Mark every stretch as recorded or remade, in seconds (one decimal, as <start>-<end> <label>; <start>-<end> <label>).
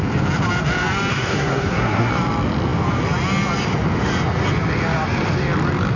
0.0-1.1 recorded; 1.1-2.1 remade; 2.1-6.0 recorded